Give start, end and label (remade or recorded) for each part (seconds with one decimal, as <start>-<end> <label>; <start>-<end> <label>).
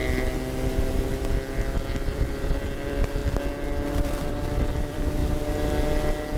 0.0-1.9 recorded; 1.9-3.2 remade; 3.2-3.9 recorded; 3.9-5.2 remade; 5.2-6.4 recorded